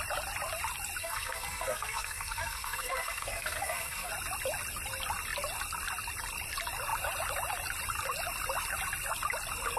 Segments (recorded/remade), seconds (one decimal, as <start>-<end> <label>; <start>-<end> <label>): 0.0-1.0 recorded; 1.0-4.1 remade; 4.1-9.8 recorded